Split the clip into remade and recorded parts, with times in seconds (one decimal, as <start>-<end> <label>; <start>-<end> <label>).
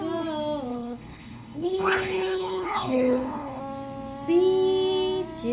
0.0-0.7 recorded; 0.7-3.6 remade; 3.6-5.5 recorded